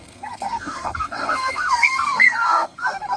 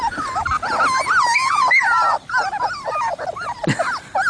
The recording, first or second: second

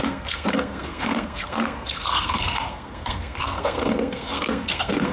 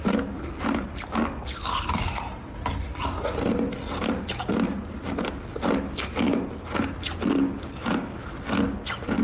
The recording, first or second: second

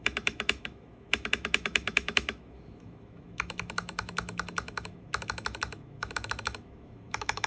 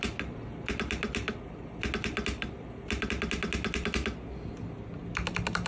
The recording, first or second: second